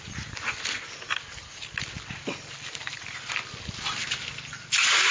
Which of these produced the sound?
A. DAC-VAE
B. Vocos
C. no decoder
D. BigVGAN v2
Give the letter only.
C